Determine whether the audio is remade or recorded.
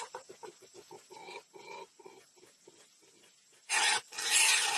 recorded